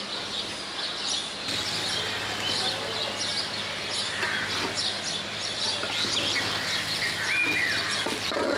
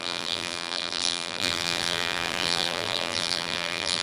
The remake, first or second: second